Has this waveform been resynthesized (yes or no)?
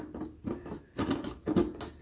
no